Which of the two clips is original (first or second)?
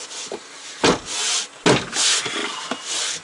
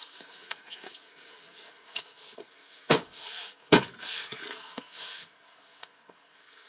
first